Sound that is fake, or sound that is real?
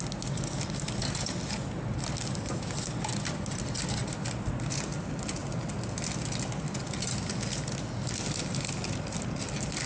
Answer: real